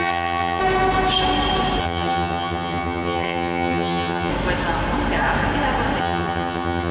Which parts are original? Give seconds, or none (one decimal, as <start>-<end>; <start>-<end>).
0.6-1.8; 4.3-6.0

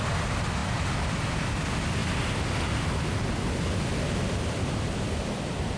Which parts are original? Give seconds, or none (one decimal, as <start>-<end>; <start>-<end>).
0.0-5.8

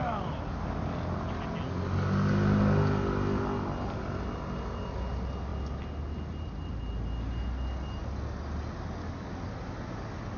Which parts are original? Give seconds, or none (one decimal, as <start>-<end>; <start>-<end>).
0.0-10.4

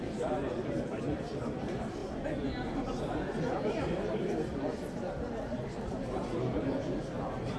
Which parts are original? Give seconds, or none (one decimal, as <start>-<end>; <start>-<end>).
2.0-3.8

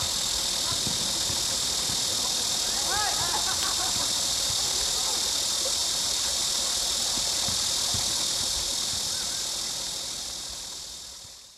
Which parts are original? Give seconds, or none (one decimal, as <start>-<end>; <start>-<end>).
0.0-5.8; 6.4-11.6

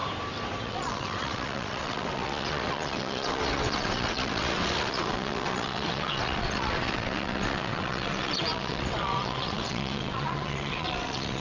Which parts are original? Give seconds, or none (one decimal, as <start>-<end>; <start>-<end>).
0.0-0.6

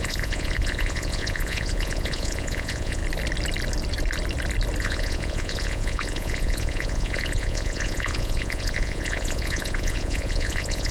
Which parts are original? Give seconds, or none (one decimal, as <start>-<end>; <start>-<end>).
3.0-4.8

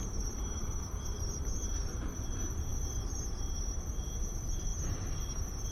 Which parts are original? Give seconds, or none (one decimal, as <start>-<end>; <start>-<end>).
4.7-5.7